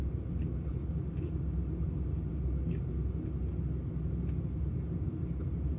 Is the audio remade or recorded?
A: recorded